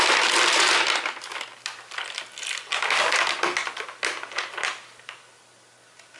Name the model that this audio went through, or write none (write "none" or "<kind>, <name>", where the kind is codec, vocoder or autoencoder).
none